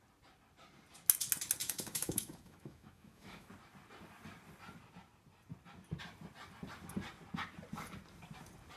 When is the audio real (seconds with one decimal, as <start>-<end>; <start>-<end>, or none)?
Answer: 0.0-1.6; 3.5-8.8